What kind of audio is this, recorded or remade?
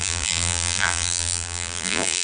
remade